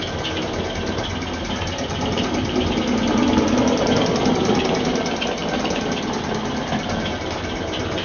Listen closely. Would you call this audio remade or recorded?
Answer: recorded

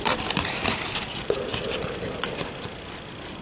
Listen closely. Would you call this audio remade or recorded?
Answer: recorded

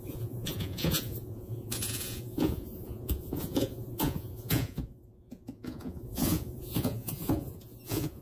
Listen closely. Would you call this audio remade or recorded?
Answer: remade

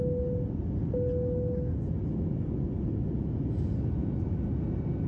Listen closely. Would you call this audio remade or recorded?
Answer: recorded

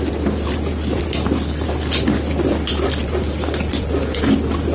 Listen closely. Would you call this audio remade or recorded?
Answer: recorded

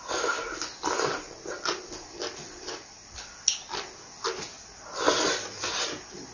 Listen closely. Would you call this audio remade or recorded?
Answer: recorded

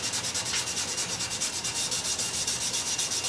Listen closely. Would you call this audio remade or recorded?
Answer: recorded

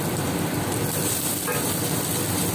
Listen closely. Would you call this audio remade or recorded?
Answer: recorded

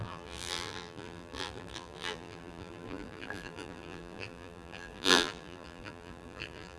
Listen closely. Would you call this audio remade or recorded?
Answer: remade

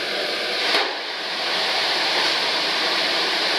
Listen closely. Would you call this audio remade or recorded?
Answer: remade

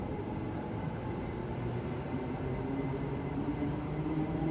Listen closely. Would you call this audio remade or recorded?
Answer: remade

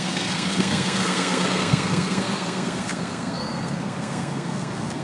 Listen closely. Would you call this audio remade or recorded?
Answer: remade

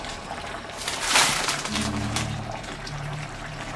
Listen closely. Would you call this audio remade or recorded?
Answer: remade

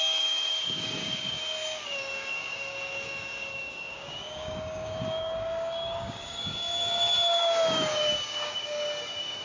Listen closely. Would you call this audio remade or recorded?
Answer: remade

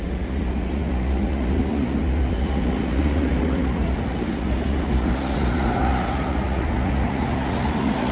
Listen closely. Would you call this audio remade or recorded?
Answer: remade